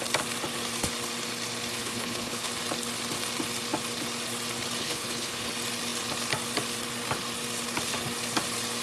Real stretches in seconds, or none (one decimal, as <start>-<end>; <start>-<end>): 0.0-1.8; 2.5-4.8; 5.5-8.8